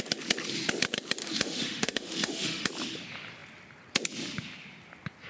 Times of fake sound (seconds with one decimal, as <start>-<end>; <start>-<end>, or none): 1.2-2.7